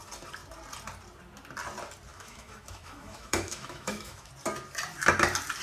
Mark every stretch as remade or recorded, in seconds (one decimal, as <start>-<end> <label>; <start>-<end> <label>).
0.0-2.1 recorded; 2.1-4.3 remade; 4.3-5.6 recorded